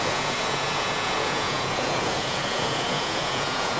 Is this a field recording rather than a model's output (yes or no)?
no